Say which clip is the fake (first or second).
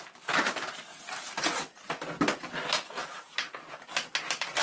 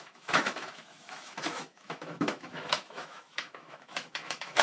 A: second